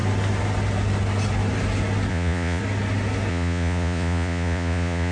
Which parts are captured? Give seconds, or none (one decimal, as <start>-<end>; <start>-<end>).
0.0-2.1; 2.6-3.3